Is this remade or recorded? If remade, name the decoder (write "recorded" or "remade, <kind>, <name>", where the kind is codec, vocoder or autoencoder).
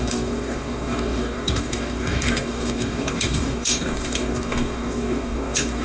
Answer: remade, codec, DAC